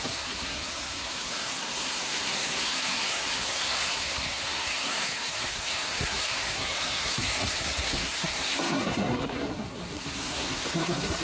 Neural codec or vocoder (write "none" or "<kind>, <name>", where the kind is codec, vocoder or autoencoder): codec, SNAC